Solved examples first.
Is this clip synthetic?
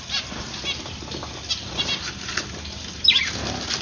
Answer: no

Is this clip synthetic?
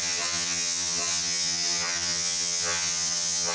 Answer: yes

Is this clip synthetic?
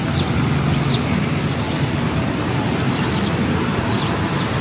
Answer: no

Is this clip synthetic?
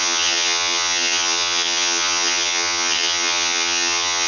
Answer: yes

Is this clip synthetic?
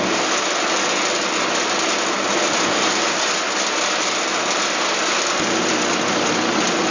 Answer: no